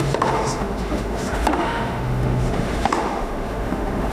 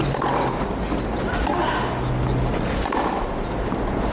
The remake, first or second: first